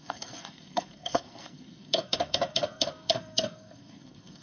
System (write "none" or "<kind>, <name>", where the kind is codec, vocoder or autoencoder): codec, SNAC